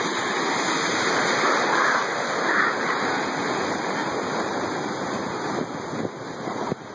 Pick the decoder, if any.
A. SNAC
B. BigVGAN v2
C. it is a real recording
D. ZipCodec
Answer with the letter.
C